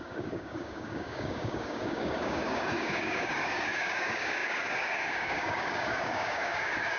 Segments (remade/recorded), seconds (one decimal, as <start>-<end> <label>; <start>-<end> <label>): 0.0-7.0 remade